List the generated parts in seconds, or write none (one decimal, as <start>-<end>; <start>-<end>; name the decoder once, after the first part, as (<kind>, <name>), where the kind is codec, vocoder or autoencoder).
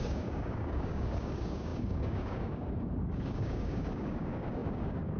0.0-5.2 (codec, DAC)